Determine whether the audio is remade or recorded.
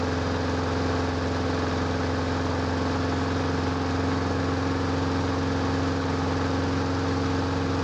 recorded